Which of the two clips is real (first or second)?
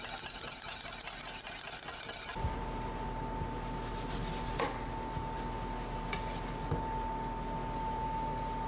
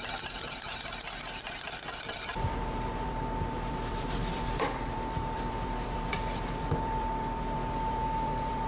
first